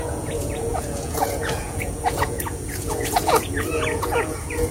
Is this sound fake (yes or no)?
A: yes